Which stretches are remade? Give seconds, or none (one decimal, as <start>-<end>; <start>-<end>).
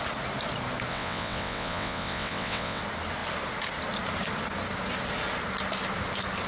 0.9-2.8